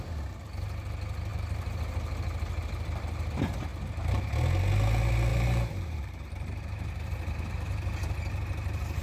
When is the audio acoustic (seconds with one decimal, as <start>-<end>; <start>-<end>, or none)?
0.0-1.3; 1.8-3.7; 4.2-5.3; 7.3-9.0